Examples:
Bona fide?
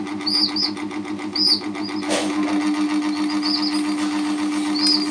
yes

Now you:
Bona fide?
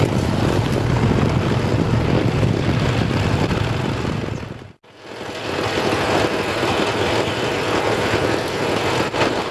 yes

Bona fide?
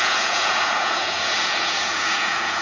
no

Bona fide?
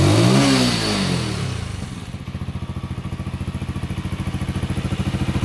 yes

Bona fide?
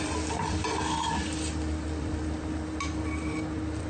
yes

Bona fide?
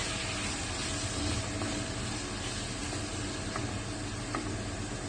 yes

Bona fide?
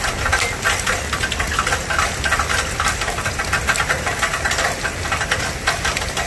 yes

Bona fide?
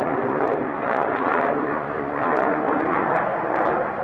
no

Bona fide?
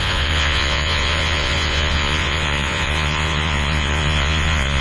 no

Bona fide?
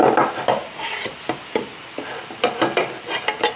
yes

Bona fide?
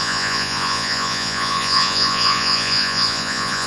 no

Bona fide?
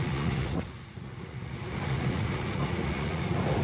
no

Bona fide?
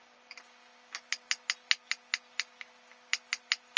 yes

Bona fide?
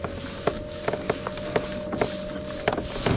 yes